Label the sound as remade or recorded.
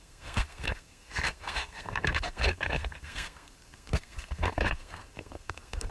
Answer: remade